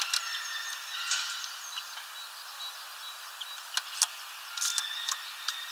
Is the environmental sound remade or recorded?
recorded